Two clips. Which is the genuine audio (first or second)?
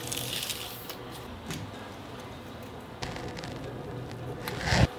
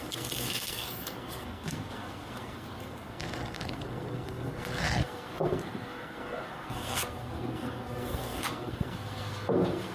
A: first